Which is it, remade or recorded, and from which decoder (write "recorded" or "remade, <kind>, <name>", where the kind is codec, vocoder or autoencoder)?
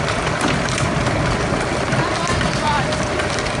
recorded